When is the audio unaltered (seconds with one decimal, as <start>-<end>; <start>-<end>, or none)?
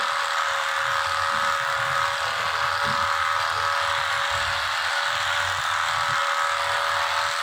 0.0-7.4